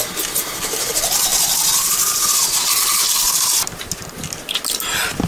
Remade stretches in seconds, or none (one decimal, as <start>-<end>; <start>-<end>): 0.0-0.9